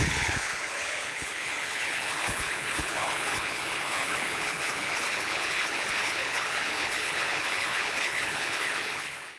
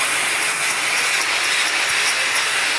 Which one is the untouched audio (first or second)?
second